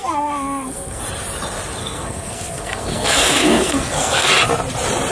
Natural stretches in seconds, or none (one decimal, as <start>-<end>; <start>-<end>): 1.0-1.8; 4.3-5.1